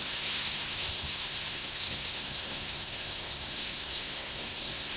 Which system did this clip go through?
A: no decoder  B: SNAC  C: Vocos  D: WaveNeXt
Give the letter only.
B